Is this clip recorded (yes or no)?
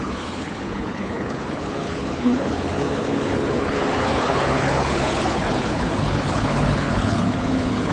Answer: no